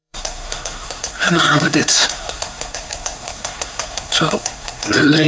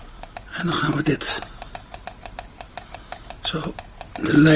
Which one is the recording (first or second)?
second